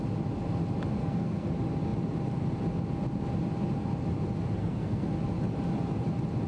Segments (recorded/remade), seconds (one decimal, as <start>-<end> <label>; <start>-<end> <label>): 0.0-1.0 recorded; 1.0-1.5 remade; 1.5-4.6 recorded; 4.6-5.1 remade; 5.1-6.5 recorded